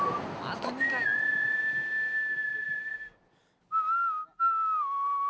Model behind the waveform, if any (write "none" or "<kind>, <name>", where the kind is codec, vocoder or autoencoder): none